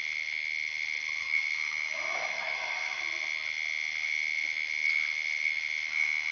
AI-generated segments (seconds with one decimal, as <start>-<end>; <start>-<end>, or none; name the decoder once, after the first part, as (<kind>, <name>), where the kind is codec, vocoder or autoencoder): 1.2-3.0 (autoencoder, DAC-VAE)